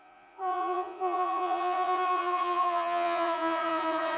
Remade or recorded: remade